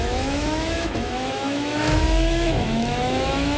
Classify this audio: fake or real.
fake